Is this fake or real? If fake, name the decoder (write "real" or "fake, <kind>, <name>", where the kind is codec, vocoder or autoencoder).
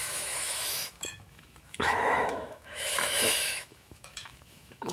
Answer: fake, autoencoder, DAC-VAE